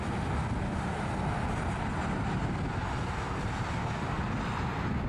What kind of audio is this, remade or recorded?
recorded